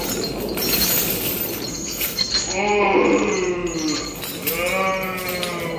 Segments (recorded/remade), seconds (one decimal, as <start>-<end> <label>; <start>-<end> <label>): 0.0-1.7 recorded; 1.7-2.3 remade; 2.3-5.8 recorded